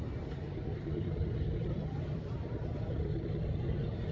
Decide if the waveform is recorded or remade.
remade